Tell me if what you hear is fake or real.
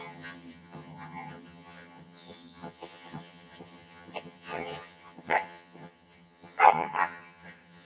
fake